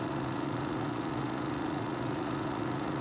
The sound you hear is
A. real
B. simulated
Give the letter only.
B